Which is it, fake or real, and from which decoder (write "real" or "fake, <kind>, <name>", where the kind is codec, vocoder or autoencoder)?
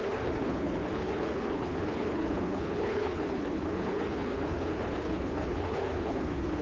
fake, codec, HILCodec